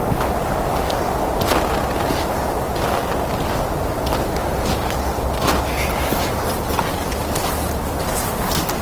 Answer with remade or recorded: recorded